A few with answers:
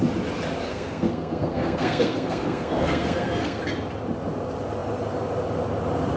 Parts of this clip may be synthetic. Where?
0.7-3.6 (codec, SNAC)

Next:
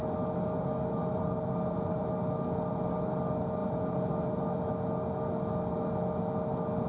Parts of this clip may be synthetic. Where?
1.0-2.1 (vocoder, BigVGAN v2); 3.6-4.6

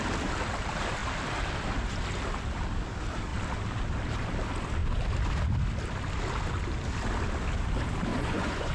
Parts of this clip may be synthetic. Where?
8.1-8.7 (vocoder, Vocos)